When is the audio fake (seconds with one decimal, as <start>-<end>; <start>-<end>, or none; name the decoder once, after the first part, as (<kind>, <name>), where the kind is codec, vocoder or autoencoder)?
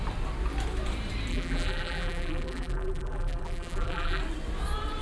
1.3-4.2 (vocoder, BigVGAN v2)